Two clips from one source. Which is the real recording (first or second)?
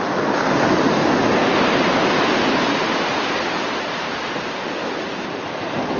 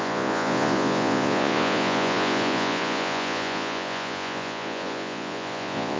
first